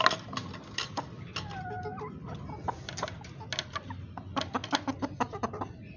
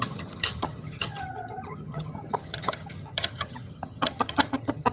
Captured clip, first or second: first